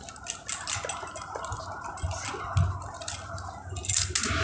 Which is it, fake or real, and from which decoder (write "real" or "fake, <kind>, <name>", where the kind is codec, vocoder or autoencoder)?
real